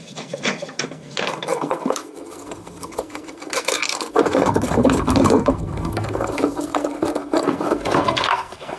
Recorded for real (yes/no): no